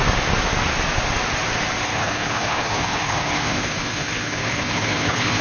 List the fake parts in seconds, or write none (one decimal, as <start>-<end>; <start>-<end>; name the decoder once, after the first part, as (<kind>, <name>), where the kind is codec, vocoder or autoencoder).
1.9-5.4 (codec, HILCodec)